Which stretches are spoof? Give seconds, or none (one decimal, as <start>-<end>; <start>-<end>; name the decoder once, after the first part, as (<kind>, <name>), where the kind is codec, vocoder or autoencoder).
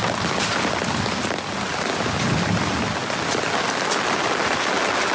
none